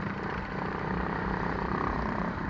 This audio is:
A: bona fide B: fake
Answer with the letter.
B